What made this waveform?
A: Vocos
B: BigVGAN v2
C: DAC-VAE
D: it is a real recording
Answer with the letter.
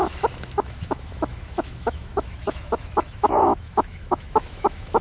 C